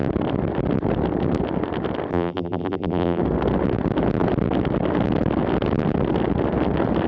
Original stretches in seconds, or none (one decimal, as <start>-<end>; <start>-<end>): 0.0-2.1; 3.2-7.1